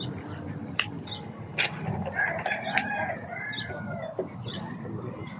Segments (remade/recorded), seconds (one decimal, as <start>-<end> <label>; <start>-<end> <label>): 0.0-5.4 recorded